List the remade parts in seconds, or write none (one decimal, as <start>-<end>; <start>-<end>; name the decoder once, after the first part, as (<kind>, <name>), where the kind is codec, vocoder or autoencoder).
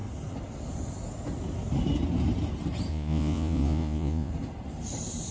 2.9-4.3 (vocoder, Vocos)